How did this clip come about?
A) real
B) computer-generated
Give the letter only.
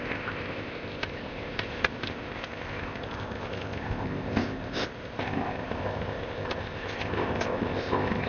B